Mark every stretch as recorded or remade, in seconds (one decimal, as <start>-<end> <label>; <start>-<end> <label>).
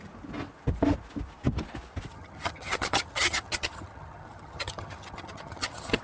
0.0-2.1 recorded; 2.1-6.0 remade